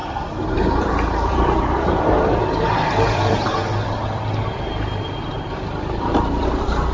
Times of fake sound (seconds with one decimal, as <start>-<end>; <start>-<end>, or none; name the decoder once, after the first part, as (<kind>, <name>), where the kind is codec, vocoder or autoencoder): 0.5-6.9 (vocoder, BigVGAN v2)